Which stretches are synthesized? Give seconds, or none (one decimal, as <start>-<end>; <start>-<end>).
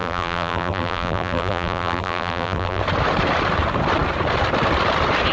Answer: 0.0-2.8